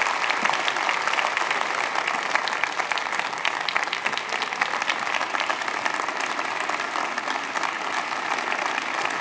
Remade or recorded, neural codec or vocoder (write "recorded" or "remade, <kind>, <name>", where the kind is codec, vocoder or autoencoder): recorded